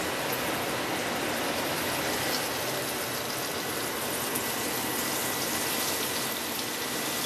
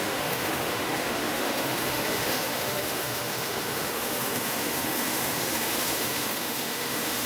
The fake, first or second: second